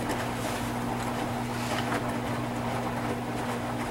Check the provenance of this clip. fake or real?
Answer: real